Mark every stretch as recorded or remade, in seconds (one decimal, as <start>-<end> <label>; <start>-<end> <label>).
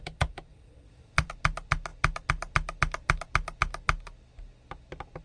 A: 0.0-0.5 recorded; 0.5-1.3 remade; 1.3-5.2 recorded